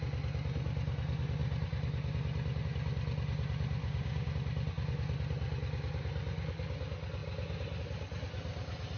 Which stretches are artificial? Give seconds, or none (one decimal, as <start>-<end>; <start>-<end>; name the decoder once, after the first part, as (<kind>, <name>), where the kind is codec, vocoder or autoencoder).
3.8-4.3 (codec, DAC)